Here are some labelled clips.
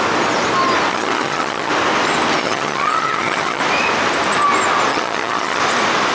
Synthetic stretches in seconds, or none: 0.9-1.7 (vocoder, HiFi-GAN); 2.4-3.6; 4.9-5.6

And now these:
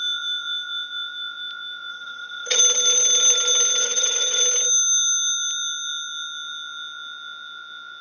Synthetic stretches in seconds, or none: 1.9-2.6 (vocoder, HiFi-GAN); 3.8-4.4

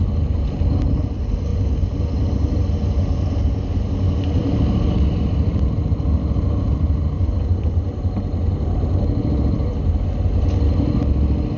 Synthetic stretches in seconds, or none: none

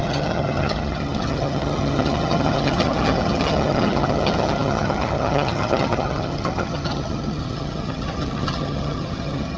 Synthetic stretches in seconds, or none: 0.0-9.6 (vocoder, HiFi-GAN)

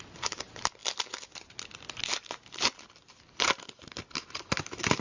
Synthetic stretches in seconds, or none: none

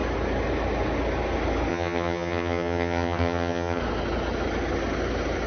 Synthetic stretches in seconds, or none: 1.7-3.8 (vocoder, HiFi-GAN)